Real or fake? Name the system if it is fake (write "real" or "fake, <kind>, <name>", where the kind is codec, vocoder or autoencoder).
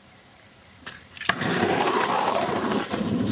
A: fake, vocoder, BigVGAN v2